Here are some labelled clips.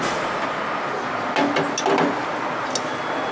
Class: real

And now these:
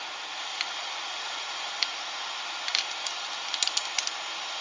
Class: real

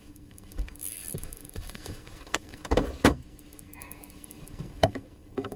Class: fake